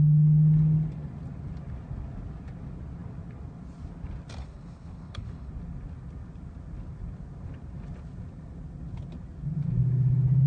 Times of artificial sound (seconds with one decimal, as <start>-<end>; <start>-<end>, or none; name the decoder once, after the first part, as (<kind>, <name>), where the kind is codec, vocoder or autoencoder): 4.4-5.5 (codec, HILCodec)